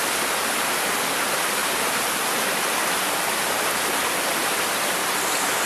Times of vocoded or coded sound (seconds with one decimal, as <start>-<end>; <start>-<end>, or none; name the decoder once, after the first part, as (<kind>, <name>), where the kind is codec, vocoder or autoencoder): none